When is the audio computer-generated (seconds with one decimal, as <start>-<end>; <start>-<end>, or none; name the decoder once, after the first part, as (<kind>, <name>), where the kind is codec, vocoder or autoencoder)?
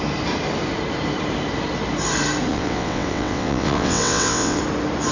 2.5-4.6 (vocoder, WaveNeXt)